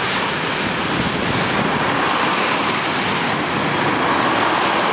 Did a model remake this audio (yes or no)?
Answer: no